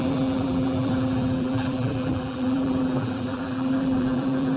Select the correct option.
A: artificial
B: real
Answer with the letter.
A